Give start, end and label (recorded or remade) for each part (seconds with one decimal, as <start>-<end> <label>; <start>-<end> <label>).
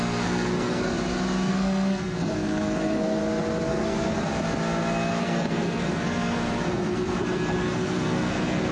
0.0-0.9 remade; 0.9-1.5 recorded; 1.5-3.2 remade; 3.2-3.7 recorded; 3.7-4.3 remade; 4.3-5.2 recorded; 5.2-8.7 remade